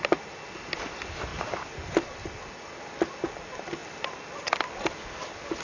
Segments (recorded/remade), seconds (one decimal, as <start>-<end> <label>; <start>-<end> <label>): 0.0-5.6 recorded